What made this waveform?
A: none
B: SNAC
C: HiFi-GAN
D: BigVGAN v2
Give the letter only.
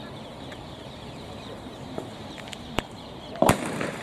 D